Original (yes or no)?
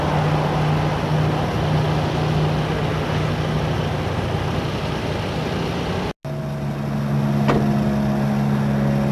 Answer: yes